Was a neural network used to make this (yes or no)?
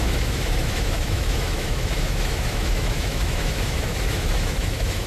yes